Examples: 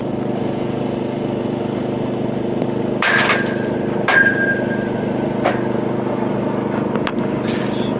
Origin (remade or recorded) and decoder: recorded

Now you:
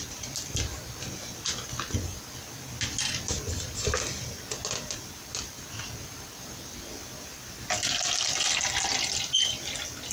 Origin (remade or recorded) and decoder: recorded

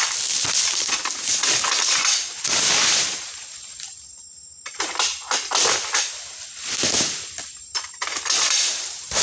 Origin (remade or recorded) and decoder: remade, vocoder, BigVGAN v2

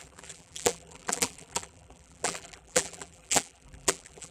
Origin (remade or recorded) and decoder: remade, vocoder, BigVGAN v2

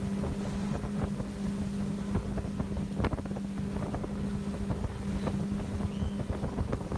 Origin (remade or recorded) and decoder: recorded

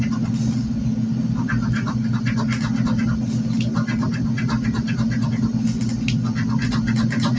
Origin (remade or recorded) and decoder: recorded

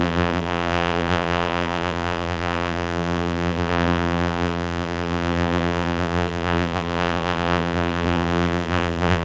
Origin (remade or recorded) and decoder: remade, vocoder, BigVGAN v2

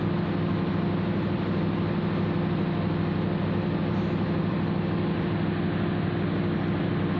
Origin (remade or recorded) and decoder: recorded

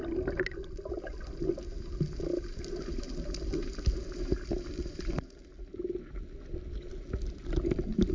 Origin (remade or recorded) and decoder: recorded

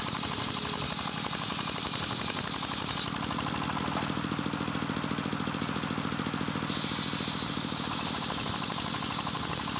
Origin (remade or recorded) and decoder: recorded